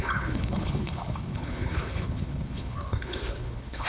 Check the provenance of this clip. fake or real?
fake